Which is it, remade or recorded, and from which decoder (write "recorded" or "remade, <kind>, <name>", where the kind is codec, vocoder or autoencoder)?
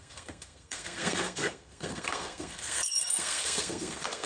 remade, codec, SNAC